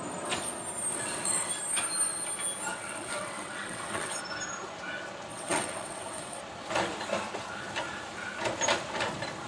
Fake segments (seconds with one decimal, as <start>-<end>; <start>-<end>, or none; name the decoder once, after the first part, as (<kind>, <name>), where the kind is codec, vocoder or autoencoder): 0.9-1.5 (vocoder, WaveNeXt); 2.7-4.2; 5.3-6.4